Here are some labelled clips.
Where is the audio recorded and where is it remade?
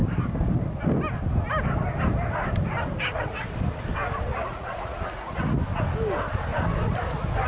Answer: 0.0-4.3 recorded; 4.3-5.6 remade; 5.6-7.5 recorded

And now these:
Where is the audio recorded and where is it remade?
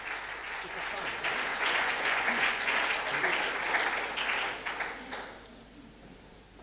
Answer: 0.0-0.4 recorded; 0.4-1.0 remade; 1.0-1.5 recorded; 1.5-2.9 remade; 2.9-6.6 recorded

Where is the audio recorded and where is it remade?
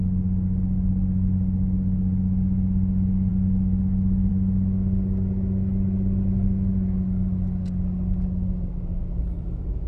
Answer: 0.0-9.9 recorded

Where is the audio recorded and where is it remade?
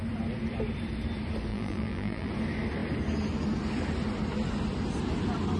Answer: 0.0-1.5 recorded; 1.5-2.3 remade; 2.3-5.6 recorded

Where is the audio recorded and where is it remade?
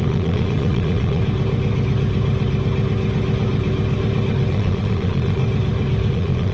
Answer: 0.0-1.2 remade; 1.2-4.5 recorded; 4.5-5.4 remade; 5.4-6.1 recorded; 6.1-6.5 remade